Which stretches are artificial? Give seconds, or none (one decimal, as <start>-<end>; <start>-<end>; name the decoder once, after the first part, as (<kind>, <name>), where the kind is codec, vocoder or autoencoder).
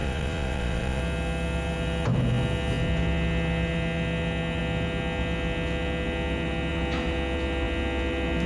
0.0-1.0 (vocoder, Vocos)